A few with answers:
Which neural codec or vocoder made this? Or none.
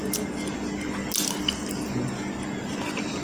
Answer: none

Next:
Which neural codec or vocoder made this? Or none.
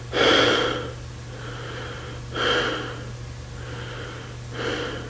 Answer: none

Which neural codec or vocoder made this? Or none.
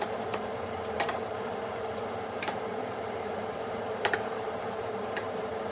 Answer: vocoder, BigVGAN v2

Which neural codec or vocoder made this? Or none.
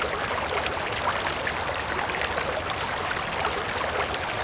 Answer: none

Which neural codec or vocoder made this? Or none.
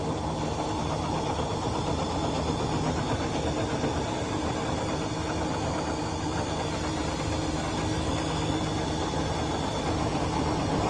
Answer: none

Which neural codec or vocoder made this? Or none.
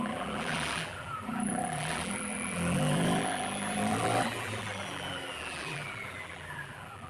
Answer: vocoder, BigVGAN v2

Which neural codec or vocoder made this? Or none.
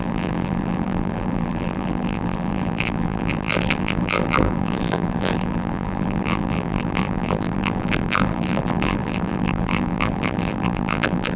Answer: vocoder, BigVGAN v2